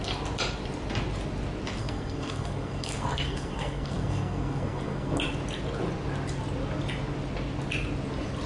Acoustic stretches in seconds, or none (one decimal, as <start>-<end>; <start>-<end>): 0.0-1.8; 5.2-8.5